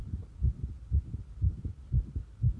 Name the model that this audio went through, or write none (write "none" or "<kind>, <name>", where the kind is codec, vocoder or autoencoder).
none